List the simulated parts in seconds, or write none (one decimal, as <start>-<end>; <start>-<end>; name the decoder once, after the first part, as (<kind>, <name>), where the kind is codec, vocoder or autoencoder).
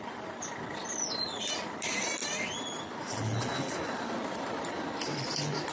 none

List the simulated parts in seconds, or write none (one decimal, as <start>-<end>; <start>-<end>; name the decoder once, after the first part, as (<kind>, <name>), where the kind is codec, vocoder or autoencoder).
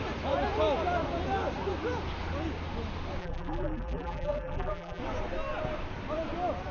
3.2-5.0 (vocoder, BigVGAN v2)